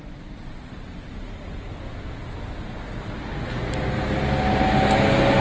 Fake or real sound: real